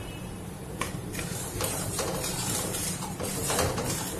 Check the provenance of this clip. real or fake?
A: fake